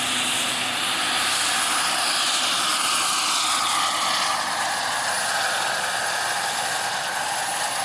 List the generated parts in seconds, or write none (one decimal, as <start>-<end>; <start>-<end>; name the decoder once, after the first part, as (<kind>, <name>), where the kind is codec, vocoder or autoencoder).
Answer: none